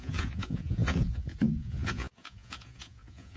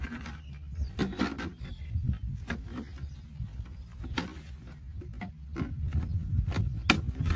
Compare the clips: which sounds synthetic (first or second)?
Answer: first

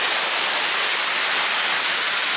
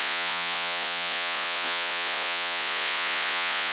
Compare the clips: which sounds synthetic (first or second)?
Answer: second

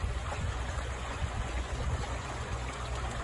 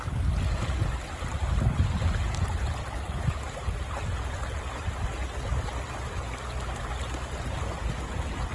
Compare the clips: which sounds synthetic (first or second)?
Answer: first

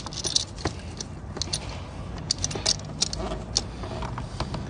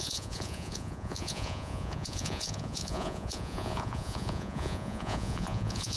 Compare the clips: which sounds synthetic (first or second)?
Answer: second